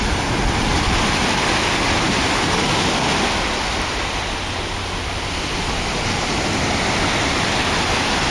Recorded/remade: recorded